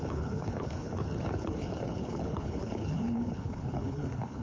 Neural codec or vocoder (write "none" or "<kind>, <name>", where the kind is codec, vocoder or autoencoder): codec, HILCodec